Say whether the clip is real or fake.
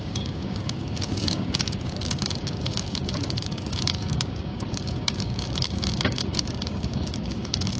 fake